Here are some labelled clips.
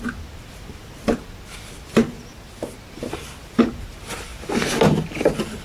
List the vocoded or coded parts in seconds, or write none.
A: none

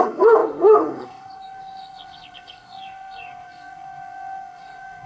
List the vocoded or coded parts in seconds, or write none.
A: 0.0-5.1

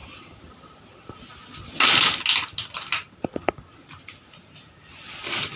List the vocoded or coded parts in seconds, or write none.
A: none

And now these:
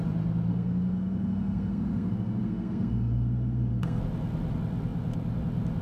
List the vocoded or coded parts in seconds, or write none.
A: 0.5-4.0